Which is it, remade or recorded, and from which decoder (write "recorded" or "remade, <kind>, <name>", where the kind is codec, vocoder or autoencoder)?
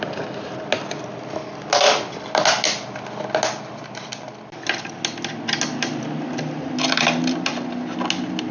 recorded